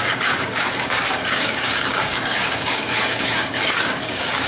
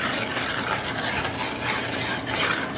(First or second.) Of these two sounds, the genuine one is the second